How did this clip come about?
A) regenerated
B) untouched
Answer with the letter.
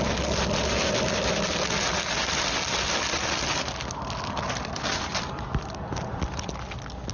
B